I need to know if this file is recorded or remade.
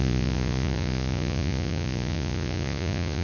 remade